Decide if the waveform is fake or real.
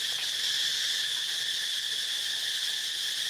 real